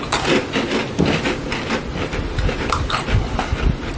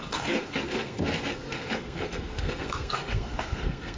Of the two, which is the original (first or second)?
first